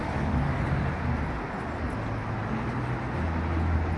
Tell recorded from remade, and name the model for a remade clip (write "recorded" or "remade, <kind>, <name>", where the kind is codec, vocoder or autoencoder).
recorded